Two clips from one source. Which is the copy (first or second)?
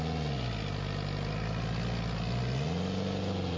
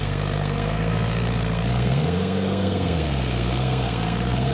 second